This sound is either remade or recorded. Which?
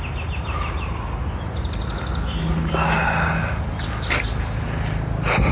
recorded